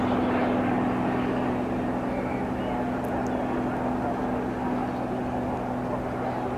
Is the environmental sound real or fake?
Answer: real